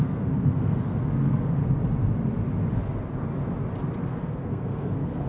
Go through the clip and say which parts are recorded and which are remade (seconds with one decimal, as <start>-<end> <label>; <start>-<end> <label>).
0.0-1.6 remade; 1.6-4.0 recorded; 4.0-5.3 remade